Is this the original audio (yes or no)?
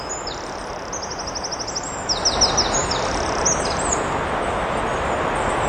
yes